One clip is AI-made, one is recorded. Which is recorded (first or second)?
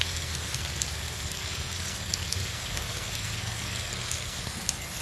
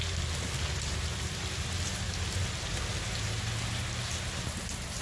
second